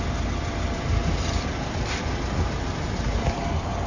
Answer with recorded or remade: remade